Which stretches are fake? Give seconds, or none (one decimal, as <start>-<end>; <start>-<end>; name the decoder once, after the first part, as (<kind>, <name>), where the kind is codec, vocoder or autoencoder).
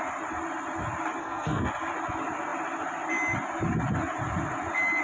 1.2-1.7 (codec, SNAC)